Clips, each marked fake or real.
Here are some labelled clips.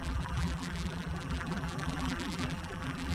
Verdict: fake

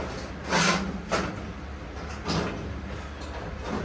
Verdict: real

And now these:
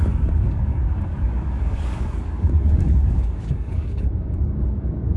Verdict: fake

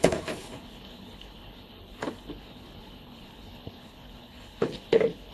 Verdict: fake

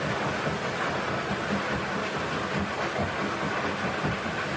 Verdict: real